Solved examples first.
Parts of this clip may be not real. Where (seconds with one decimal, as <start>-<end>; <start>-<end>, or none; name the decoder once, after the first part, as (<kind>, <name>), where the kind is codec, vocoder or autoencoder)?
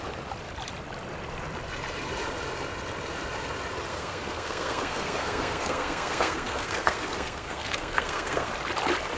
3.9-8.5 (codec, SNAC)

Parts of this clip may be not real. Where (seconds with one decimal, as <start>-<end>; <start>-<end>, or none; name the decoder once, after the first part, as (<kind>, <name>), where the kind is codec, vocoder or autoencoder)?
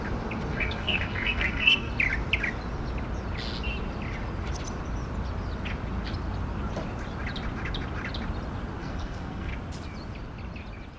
0.5-1.9 (codec, SNAC); 8.8-9.5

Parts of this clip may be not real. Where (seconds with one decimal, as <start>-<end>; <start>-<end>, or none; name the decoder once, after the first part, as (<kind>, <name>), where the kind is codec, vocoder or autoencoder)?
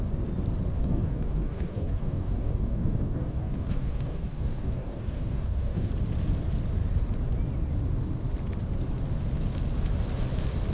0.8-5.9 (codec, DAC)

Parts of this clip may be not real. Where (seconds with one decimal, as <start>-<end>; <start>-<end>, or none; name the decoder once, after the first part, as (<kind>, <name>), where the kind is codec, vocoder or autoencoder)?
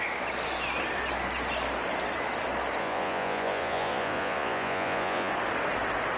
2.8-5.3 (vocoder, Vocos)